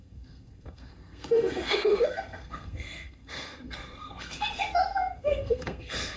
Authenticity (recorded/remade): remade